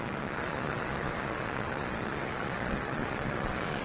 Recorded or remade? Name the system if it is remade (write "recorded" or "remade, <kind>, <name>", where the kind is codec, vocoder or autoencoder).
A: remade, vocoder, Vocos